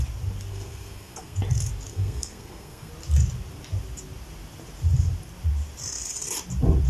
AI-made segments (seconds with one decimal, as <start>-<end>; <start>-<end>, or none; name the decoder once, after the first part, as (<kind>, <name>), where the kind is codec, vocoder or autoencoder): 0.5-1.4 (codec, SNAC); 1.9-2.9